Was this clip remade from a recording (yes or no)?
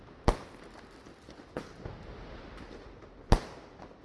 no